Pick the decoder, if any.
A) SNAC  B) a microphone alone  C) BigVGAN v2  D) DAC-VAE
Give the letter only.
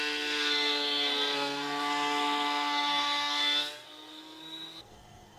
A